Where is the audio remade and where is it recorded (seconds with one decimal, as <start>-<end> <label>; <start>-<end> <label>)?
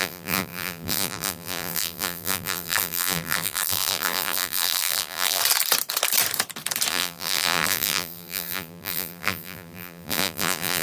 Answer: 0.0-5.4 remade; 5.4-6.9 recorded; 6.9-10.8 remade